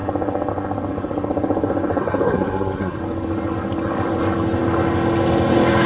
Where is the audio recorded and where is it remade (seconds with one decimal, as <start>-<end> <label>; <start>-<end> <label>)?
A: 0.0-2.0 recorded; 2.0-3.0 remade; 3.0-5.9 recorded